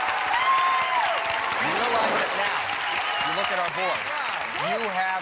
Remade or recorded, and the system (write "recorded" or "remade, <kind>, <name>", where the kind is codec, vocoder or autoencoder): recorded